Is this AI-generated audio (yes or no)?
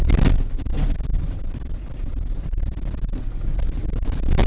no